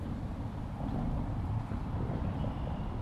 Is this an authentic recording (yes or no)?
no